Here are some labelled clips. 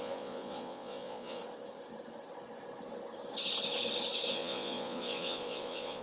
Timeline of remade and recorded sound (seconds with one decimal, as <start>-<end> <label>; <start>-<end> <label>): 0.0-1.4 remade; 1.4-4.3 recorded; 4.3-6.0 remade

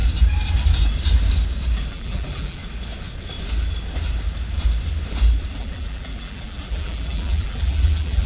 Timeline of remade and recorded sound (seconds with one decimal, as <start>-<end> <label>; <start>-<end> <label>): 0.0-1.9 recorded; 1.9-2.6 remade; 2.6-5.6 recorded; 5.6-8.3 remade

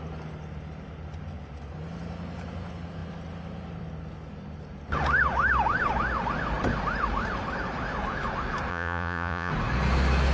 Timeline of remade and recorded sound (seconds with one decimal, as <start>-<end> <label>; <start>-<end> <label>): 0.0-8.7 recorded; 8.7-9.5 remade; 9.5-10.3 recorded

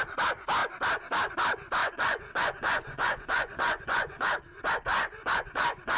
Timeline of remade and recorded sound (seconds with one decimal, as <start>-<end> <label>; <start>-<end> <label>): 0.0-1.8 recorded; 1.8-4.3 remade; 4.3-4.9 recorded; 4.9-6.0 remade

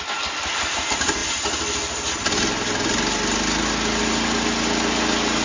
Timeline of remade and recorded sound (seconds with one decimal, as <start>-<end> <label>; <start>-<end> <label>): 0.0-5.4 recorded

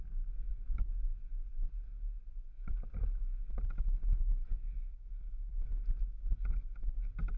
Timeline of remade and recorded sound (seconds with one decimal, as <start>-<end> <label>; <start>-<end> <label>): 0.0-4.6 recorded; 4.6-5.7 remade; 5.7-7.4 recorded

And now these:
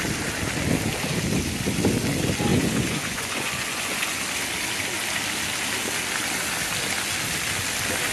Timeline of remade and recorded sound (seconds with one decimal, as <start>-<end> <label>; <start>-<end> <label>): 0.0-2.5 recorded; 2.5-4.2 remade; 4.2-8.1 recorded